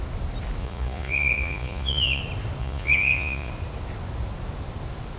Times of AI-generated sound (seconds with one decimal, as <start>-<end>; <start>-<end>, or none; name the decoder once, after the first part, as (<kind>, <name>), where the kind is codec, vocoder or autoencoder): 0.6-2.2 (vocoder, Vocos); 2.6-3.5